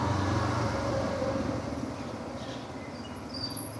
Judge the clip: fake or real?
real